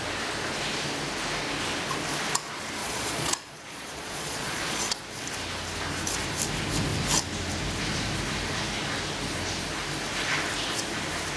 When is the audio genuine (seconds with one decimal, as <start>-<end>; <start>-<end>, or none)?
0.0-2.8; 5.0-11.4